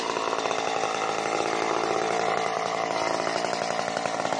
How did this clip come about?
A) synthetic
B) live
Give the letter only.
B